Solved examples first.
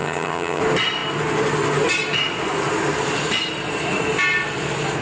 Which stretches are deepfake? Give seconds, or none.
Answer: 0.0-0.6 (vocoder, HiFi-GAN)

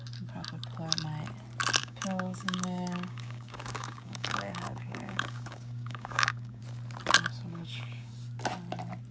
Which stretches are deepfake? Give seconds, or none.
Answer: 1.8-6.6 (codec, DAC); 7.5-8.1

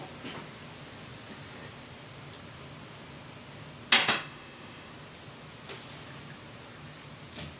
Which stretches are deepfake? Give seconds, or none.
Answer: 4.0-4.9 (autoencoder, DAC-VAE)